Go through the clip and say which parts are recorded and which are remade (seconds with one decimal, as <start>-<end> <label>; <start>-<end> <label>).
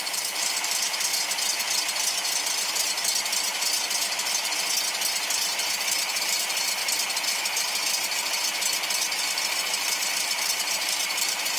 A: 0.0-1.1 remade; 1.1-6.2 recorded; 6.2-6.8 remade; 6.8-9.2 recorded; 9.2-11.6 remade